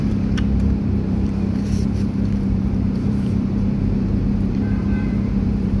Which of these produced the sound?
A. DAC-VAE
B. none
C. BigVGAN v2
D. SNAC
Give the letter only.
C